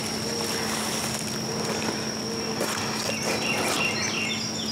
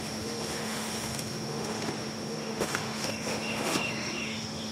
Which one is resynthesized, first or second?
second